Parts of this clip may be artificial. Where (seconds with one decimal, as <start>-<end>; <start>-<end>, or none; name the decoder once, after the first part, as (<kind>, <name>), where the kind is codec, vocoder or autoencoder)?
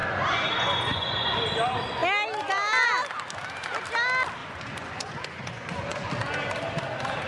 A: 0.0-1.3 (vocoder, Vocos); 4.4-6.1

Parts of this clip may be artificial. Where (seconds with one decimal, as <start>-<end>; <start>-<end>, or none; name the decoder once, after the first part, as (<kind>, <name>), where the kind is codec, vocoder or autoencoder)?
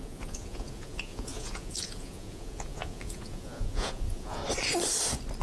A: 0.0-4.4 (vocoder, Vocos)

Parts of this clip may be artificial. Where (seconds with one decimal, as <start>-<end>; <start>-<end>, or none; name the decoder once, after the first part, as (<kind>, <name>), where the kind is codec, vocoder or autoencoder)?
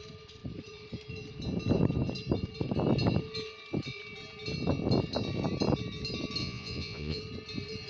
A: 6.4-7.2 (vocoder, Vocos)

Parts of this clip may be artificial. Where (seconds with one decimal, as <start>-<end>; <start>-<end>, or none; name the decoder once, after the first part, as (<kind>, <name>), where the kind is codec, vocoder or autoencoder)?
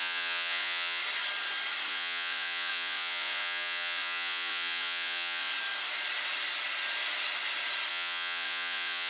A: 0.0-1.0 (vocoder, Vocos); 1.9-5.5; 7.9-9.1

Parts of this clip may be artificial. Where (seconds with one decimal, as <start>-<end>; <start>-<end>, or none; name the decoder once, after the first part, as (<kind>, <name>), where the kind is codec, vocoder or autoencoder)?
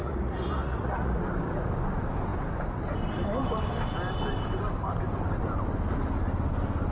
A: 0.0-1.2 (vocoder, Vocos)